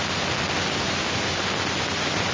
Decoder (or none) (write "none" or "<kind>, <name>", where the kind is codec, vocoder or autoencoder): none